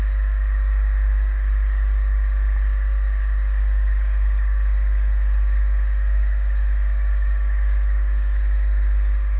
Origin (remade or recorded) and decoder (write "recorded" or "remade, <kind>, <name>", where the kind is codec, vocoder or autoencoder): remade, codec, DAC